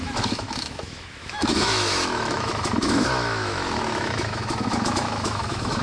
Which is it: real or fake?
fake